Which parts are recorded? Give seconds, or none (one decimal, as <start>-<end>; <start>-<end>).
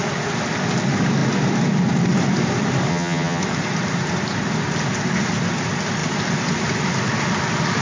0.0-2.9; 3.4-7.8